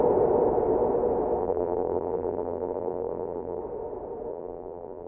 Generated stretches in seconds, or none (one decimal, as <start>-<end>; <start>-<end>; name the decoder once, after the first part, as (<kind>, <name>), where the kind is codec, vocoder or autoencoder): 1.4-3.6 (vocoder, BigVGAN v2); 4.3-5.1